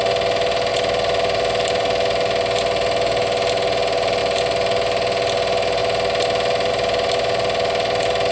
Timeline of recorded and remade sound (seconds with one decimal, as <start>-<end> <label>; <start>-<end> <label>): 0.0-8.3 recorded